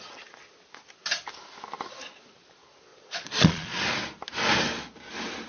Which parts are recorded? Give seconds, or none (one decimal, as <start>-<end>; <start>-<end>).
0.0-2.9; 3.8-5.5